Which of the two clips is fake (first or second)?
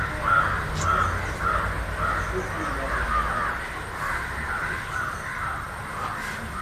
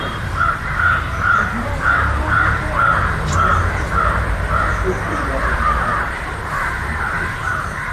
second